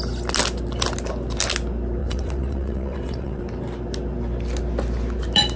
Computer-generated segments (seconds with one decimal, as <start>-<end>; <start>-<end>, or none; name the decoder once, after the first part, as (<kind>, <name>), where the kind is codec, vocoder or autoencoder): 2.0-3.4 (vocoder, WaveNeXt)

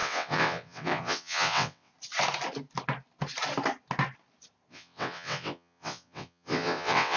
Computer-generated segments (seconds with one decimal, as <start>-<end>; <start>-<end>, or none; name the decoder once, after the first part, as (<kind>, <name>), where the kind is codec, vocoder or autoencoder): 0.0-1.9 (vocoder, WaveNeXt); 4.7-7.2

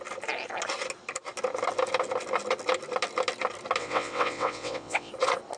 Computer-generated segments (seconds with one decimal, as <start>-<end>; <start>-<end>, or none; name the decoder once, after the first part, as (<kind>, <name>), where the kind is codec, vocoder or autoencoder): 3.8-5.1 (vocoder, WaveNeXt)

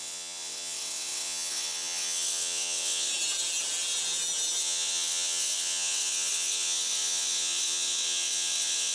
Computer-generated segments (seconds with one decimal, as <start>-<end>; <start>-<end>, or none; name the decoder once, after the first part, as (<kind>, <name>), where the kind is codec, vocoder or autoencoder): 0.0-3.1 (vocoder, WaveNeXt); 4.6-8.9

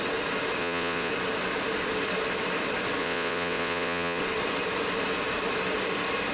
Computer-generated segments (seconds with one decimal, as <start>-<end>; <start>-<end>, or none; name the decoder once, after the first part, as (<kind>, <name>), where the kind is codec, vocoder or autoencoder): 0.6-1.1 (vocoder, WaveNeXt); 3.0-4.2

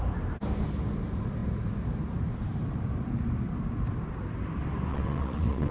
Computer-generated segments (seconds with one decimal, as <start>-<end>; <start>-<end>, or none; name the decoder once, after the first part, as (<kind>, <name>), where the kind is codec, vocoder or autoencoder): 4.9-5.7 (vocoder, WaveNeXt)

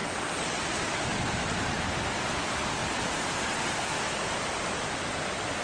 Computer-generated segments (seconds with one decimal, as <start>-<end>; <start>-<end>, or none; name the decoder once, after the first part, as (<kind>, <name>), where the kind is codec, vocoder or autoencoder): 0.0-0.6 (vocoder, WaveNeXt)